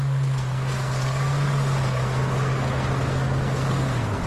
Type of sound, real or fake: fake